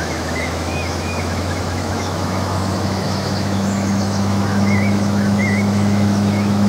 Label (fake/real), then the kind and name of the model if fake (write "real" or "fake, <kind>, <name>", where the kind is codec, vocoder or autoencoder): fake, autoencoder, DAC-VAE